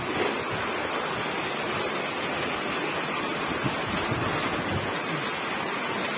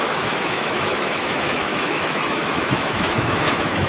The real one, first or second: first